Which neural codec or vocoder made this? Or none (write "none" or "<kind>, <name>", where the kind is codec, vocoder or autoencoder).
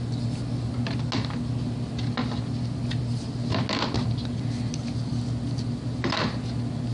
none